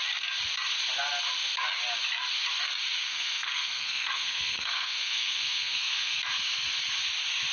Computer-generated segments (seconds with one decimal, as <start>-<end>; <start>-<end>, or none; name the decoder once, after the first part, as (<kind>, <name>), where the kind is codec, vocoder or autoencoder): 3.0-6.2 (codec, SNAC)